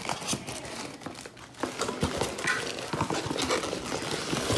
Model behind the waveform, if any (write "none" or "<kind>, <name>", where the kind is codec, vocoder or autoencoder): none